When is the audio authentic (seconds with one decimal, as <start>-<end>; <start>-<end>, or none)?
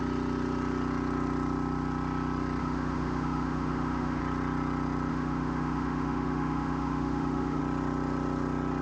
0.0-2.6; 4.2-5.1; 7.6-8.8